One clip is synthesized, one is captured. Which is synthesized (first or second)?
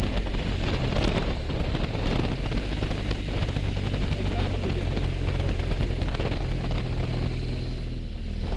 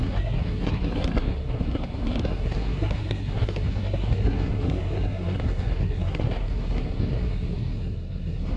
second